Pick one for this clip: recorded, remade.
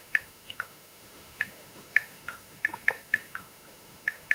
remade